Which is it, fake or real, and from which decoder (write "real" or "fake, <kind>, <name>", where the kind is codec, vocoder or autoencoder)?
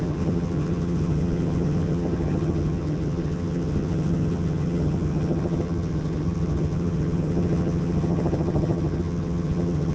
fake, vocoder, HiFi-GAN